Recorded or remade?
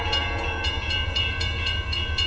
remade